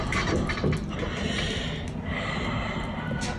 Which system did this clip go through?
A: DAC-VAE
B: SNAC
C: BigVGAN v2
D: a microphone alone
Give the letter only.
D